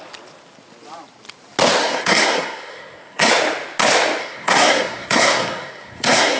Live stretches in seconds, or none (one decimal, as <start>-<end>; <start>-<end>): 0.0-1.8; 3.3-4.2